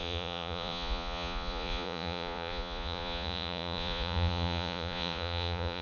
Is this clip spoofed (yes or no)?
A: yes